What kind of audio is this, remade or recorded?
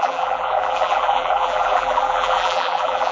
remade